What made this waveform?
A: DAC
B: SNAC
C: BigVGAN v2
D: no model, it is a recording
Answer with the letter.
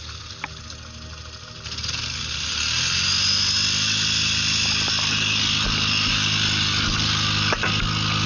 D